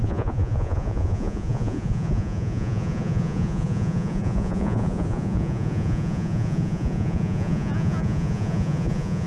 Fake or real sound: fake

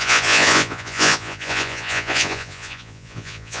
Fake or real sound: fake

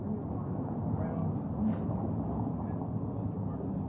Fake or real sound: real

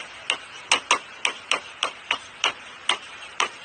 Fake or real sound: real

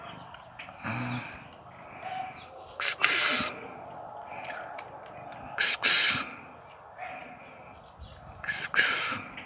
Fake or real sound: real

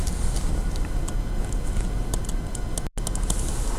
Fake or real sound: real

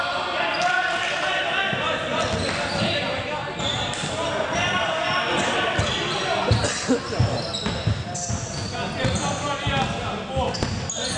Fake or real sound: real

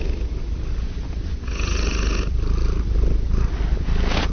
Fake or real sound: real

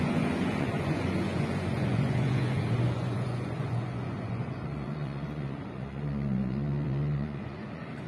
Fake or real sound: fake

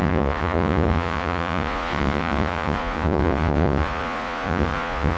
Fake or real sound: fake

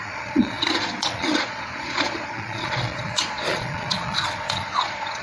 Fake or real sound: fake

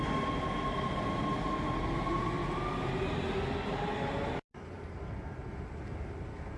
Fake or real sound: real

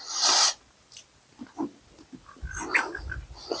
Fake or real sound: real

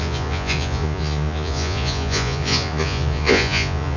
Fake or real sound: fake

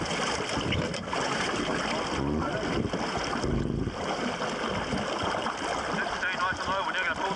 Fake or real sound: real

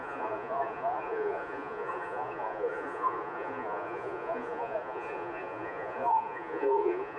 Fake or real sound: fake